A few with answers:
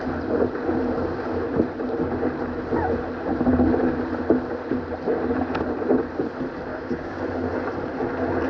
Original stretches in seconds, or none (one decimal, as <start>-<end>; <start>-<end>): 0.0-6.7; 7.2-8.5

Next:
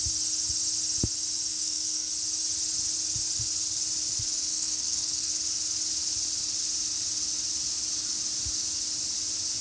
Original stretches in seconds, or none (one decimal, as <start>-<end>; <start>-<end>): 0.0-1.5; 2.1-4.5; 5.3-9.6

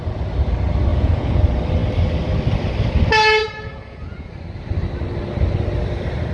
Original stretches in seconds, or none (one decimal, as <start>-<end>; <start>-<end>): 0.0-0.9; 1.4-3.4; 4.3-6.3

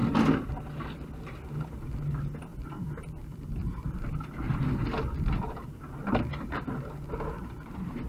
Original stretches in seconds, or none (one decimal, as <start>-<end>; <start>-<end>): 0.0-8.1